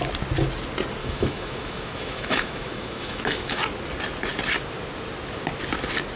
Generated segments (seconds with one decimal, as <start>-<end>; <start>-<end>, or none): 1.0-3.6